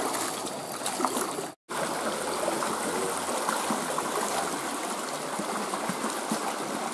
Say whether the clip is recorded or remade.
recorded